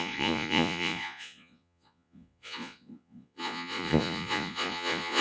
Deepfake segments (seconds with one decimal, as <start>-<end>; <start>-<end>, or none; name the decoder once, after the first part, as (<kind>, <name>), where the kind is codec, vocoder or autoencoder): 0.0-5.2 (vocoder, Vocos)